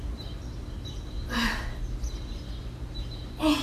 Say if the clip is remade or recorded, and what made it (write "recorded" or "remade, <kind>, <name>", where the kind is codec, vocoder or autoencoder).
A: recorded